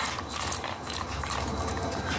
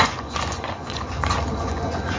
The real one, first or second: first